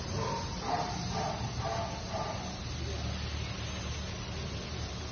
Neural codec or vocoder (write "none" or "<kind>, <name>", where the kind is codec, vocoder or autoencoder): none